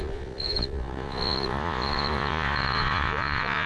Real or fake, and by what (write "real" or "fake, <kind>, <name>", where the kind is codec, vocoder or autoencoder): fake, vocoder, Vocos